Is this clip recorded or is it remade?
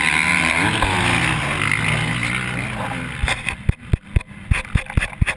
recorded